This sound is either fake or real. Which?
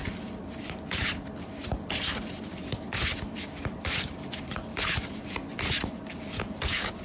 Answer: real